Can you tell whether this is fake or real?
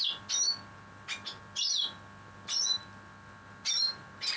real